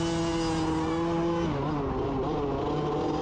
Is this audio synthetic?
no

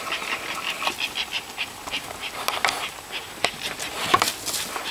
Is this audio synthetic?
no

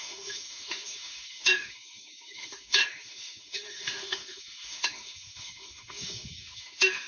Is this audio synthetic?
yes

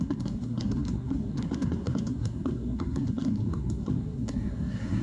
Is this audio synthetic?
yes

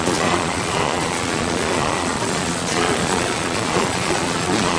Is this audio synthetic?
yes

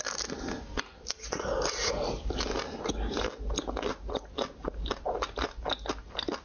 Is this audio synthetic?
no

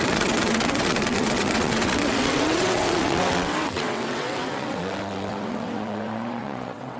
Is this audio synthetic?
yes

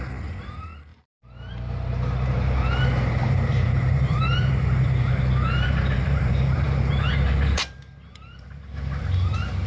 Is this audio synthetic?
yes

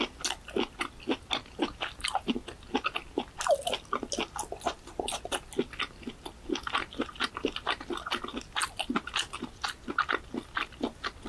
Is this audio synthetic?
no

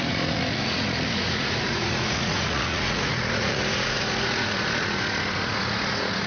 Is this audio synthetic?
yes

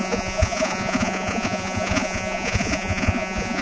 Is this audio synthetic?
yes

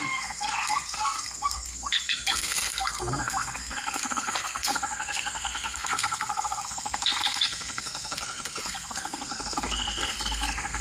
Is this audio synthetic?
yes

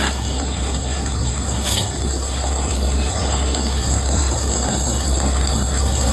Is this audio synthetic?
yes